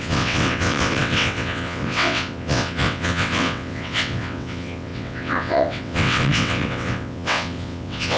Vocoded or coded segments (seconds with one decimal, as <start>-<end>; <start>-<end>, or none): 0.0-8.2